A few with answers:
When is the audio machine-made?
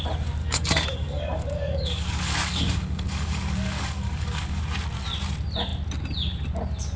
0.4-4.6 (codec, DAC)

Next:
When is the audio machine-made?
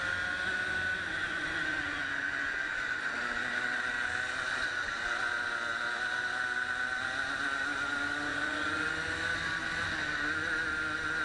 1.2-3.0 (vocoder, Vocos); 8.3-8.9